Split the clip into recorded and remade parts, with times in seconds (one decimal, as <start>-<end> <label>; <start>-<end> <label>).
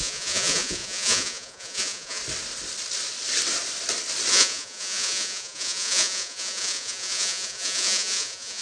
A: 0.0-2.2 remade; 2.2-4.3 recorded; 4.3-8.6 remade